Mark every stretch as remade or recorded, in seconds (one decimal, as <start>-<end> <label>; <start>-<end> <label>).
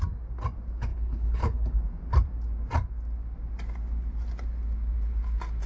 0.0-0.9 recorded; 0.9-1.8 remade; 1.8-5.7 recorded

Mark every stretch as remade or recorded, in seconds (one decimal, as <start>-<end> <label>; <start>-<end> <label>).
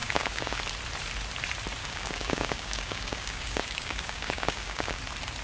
0.0-0.6 remade; 0.6-1.8 recorded; 1.8-5.0 remade; 5.0-5.4 recorded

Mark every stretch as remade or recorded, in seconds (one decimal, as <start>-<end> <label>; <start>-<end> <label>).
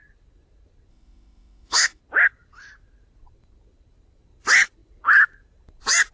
0.0-0.9 recorded; 0.9-2.0 remade; 2.0-6.1 recorded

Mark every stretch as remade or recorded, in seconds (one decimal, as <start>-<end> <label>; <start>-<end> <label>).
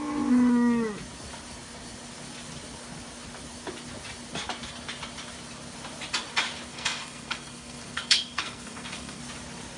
0.0-6.7 recorded; 6.7-9.2 remade; 9.2-9.8 recorded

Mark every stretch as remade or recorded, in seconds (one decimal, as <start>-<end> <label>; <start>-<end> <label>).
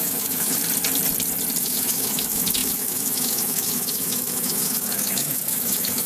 0.0-0.6 remade; 0.6-1.6 recorded; 1.6-6.1 remade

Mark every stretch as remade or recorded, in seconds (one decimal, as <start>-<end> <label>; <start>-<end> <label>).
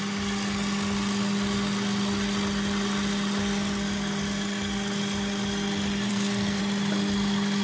0.0-6.1 recorded; 6.1-6.6 remade; 6.6-7.6 recorded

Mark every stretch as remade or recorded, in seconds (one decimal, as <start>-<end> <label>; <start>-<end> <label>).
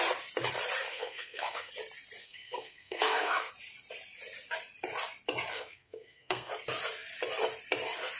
0.0-0.9 recorded; 0.9-1.7 remade; 1.7-2.2 recorded; 2.2-3.5 remade; 3.5-5.5 recorded; 5.5-6.5 remade; 6.5-8.2 recorded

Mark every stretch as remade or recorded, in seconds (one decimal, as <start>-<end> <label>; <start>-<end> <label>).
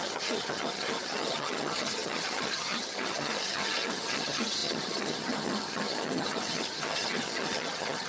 0.0-8.1 remade